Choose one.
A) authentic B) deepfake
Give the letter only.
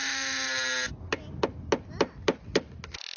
A